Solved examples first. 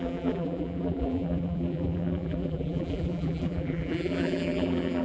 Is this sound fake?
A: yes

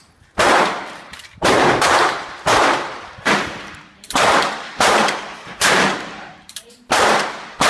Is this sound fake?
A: yes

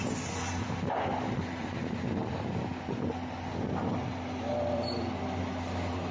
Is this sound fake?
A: no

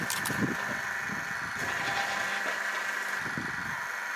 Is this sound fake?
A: no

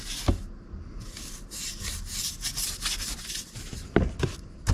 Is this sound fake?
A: no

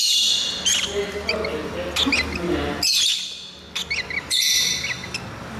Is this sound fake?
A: no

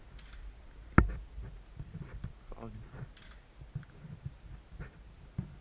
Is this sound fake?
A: no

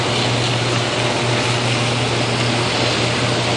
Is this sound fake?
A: no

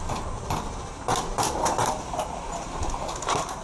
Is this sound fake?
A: no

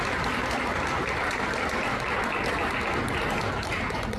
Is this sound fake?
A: no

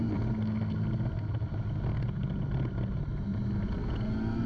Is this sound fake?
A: no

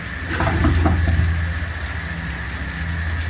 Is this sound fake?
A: no